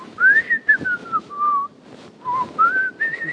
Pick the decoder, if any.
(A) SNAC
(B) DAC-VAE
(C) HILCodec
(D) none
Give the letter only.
D